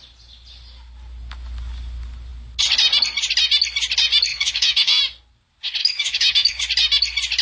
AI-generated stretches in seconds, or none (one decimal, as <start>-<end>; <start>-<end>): 4.3-5.0; 5.8-6.6